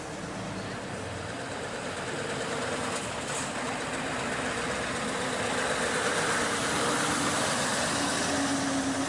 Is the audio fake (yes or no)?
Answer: no